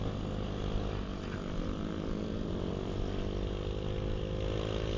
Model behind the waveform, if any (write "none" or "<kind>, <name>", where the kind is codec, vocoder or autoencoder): none